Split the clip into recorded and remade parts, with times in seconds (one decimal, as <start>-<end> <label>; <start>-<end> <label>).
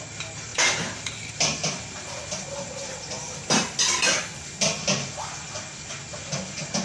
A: 0.0-6.8 recorded